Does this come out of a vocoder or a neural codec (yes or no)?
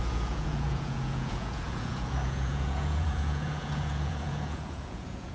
yes